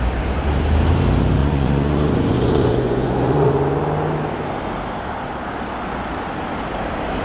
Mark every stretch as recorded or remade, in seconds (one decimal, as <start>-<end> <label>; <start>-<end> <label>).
0.0-1.4 recorded; 1.4-3.5 remade; 3.5-7.2 recorded